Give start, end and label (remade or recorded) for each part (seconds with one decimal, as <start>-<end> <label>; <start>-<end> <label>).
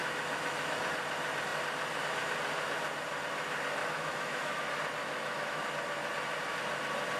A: 0.0-0.8 remade; 0.8-3.8 recorded; 3.8-4.6 remade; 4.6-5.0 recorded; 5.0-5.6 remade; 5.6-7.2 recorded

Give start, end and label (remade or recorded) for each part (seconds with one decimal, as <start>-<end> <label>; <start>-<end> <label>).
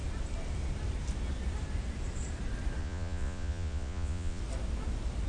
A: 0.0-2.8 recorded; 2.8-4.4 remade; 4.4-5.3 recorded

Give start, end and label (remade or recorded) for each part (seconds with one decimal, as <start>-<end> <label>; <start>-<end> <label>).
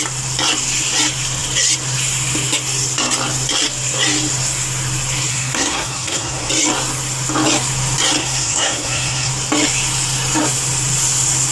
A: 0.0-5.3 recorded; 5.3-6.5 remade; 6.5-8.2 recorded; 8.2-9.3 remade; 9.3-11.5 recorded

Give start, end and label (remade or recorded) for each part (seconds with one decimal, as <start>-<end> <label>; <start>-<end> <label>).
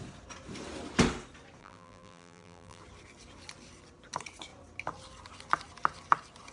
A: 0.0-1.6 recorded; 1.6-2.8 remade; 2.8-6.5 recorded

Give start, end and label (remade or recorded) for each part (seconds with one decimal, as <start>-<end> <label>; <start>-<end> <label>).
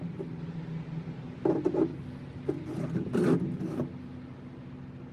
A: 0.0-5.1 recorded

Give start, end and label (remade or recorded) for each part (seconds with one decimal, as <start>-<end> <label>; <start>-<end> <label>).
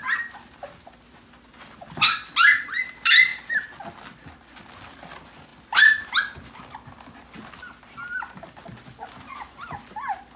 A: 0.0-10.4 recorded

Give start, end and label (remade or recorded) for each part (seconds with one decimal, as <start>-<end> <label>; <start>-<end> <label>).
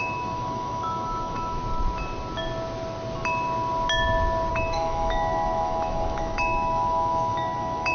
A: 0.0-1.6 remade; 1.6-4.5 recorded; 4.5-7.9 remade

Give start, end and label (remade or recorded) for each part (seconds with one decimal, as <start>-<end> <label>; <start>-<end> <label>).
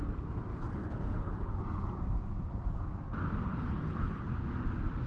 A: 0.0-0.5 recorded; 0.5-1.6 remade; 1.6-3.5 recorded; 3.5-4.2 remade; 4.2-5.1 recorded